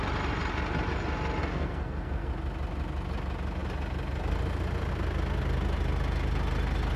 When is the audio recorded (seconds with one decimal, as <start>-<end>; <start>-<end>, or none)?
0.0-1.4; 2.3-7.0

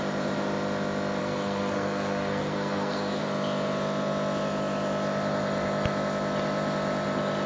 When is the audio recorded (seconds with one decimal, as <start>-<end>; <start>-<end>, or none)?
0.0-1.2; 3.2-7.5

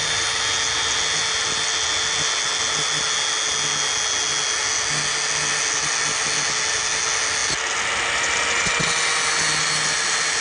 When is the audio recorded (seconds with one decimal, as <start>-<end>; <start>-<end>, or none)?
0.0-10.4

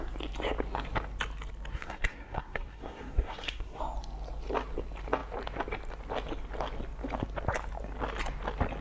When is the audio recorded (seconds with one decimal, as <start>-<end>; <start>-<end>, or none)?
0.0-1.7; 3.8-8.8